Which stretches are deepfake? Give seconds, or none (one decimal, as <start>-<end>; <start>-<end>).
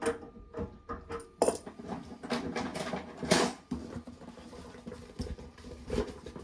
none